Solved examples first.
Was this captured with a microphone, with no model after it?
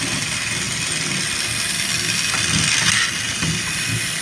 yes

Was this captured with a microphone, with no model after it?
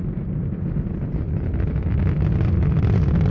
yes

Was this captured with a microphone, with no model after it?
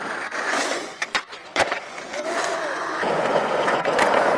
no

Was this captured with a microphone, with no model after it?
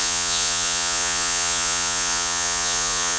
no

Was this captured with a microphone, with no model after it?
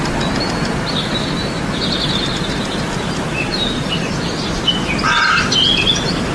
yes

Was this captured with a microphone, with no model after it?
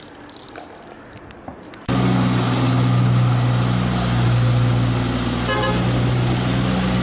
yes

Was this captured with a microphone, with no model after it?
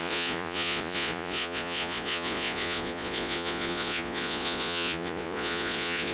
no